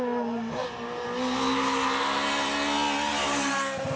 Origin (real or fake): real